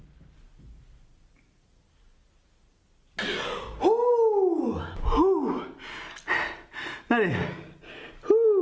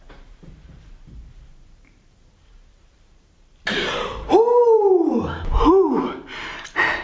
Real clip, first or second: first